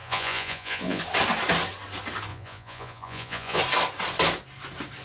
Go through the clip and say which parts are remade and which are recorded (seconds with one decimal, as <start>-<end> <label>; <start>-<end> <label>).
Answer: 0.0-1.0 remade; 1.0-2.3 recorded; 2.3-3.6 remade; 3.6-5.0 recorded